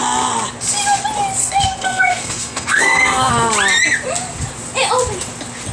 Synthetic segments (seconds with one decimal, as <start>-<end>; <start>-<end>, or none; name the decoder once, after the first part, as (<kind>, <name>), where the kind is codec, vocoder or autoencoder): 1.4-3.3 (codec, SNAC)